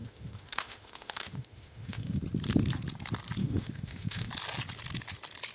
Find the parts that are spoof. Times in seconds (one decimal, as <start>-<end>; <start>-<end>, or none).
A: 0.0-2.2; 3.4-4.3